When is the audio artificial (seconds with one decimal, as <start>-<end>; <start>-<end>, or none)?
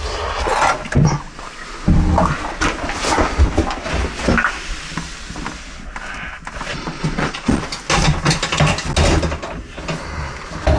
6.7-7.6